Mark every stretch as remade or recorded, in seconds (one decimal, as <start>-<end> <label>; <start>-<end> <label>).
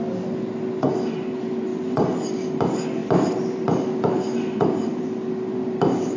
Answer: 0.0-1.7 recorded; 1.7-2.3 remade; 2.3-3.0 recorded; 3.0-3.8 remade; 3.8-6.2 recorded